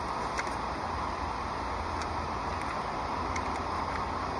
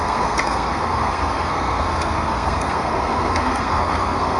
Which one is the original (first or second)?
first